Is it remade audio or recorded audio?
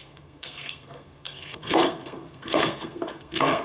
remade